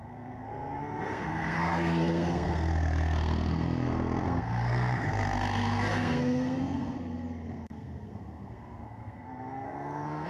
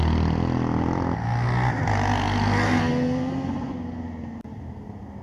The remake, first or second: first